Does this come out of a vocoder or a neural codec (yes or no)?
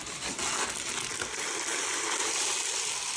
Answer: no